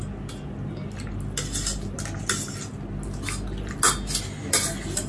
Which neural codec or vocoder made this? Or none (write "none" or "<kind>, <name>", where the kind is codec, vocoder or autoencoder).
none